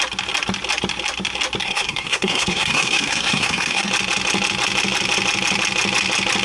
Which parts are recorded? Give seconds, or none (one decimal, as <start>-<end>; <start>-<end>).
0.0-1.6; 3.9-6.4